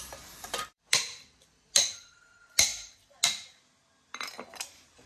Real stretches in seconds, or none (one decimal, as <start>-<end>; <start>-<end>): 2.7-5.1